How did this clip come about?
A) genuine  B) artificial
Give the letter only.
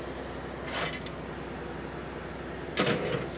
A